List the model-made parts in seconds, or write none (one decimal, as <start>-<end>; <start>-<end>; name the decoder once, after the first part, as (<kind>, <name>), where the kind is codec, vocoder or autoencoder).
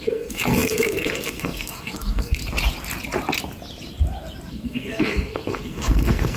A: 0.0-2.4 (codec, SNAC); 4.5-6.4